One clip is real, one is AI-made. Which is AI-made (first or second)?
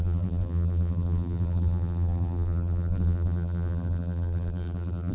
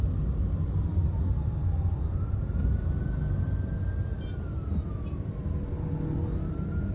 first